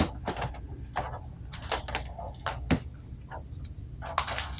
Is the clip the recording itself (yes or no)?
yes